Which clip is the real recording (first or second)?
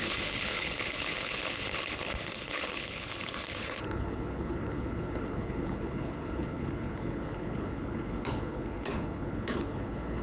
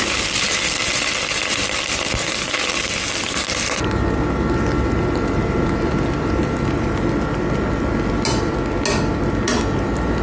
second